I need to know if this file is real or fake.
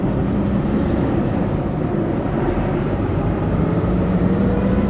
fake